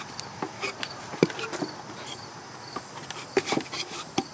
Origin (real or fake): real